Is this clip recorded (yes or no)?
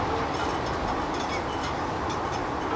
yes